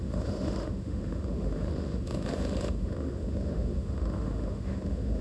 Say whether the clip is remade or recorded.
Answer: remade